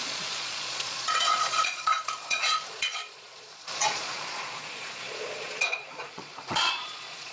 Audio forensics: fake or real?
fake